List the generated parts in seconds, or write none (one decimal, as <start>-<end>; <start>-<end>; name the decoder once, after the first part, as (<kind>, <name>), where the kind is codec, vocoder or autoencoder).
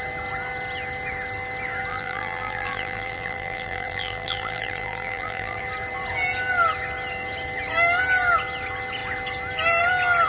1.9-5.6 (vocoder, BigVGAN v2)